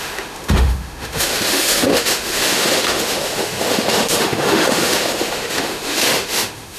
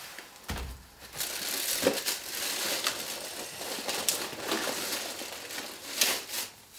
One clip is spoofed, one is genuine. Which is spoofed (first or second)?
first